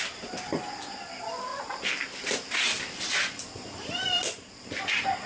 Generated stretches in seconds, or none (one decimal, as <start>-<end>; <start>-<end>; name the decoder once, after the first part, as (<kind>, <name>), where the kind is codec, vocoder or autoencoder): 1.5-4.7 (vocoder, BigVGAN v2)